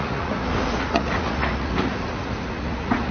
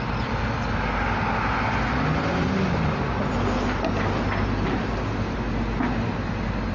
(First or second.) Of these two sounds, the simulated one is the first